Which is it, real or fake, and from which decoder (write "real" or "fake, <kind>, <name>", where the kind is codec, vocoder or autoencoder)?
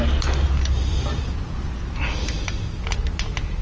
real